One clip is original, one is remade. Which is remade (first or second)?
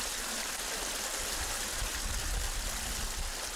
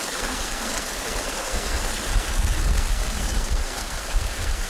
second